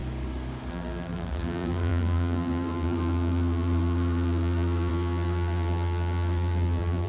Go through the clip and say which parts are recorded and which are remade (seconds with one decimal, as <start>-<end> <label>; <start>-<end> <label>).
0.0-0.7 recorded; 0.7-7.1 remade